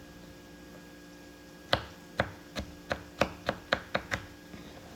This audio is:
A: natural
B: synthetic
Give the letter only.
A